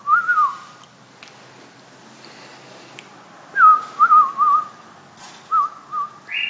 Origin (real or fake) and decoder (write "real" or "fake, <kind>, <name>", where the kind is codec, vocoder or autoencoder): real